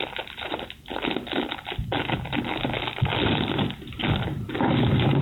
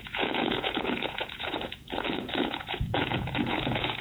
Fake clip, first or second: second